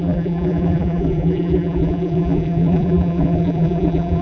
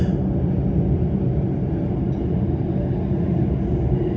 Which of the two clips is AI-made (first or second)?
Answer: first